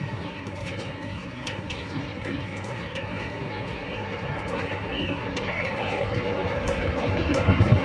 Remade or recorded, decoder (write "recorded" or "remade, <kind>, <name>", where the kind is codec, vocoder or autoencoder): remade, codec, SNAC